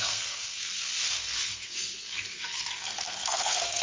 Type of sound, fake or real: fake